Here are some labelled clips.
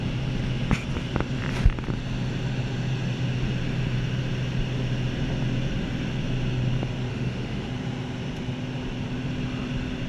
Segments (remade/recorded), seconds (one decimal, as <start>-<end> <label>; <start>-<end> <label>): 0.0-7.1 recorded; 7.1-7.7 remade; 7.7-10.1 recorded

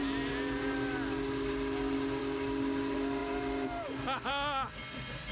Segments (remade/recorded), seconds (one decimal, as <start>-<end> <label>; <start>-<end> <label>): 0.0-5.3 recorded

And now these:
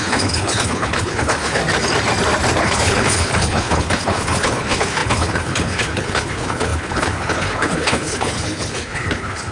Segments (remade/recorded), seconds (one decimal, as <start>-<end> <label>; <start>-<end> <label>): 0.0-1.6 remade; 1.6-2.6 recorded; 2.6-9.5 remade

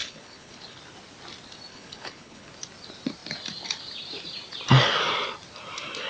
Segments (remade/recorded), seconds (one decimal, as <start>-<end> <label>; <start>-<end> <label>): 0.0-0.8 remade; 0.8-1.7 recorded; 1.7-2.5 remade; 2.5-6.1 recorded